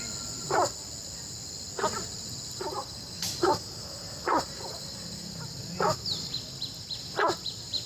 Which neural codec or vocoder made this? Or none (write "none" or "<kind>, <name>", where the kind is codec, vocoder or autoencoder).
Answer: none